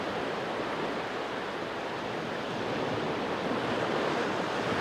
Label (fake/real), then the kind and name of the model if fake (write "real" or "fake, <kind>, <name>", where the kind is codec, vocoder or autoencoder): real